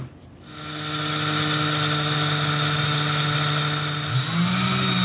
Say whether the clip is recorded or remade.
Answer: recorded